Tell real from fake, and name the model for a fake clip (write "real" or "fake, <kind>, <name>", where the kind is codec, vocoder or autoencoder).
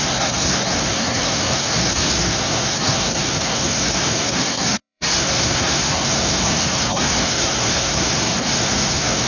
fake, codec, SNAC